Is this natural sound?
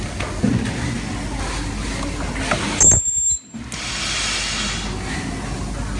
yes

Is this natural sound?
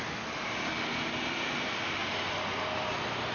yes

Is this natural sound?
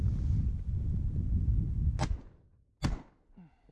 yes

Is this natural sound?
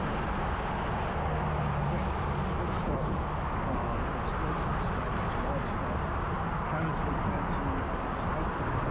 yes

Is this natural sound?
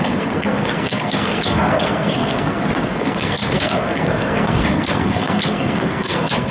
no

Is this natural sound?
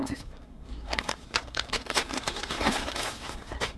no